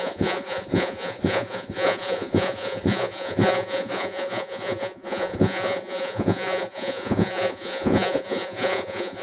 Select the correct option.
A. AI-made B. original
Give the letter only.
A